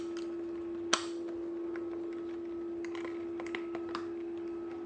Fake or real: real